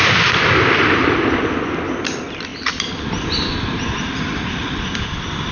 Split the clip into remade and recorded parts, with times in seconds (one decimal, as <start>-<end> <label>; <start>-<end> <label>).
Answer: 0.0-1.4 remade; 1.4-2.5 recorded; 2.5-5.5 remade